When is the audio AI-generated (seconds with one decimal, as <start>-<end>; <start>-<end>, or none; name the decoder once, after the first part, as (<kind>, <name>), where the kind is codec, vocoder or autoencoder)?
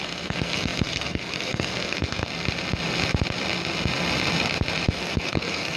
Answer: 0.0-2.3 (codec, SNAC); 4.9-5.8